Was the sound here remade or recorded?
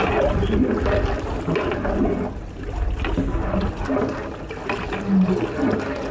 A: recorded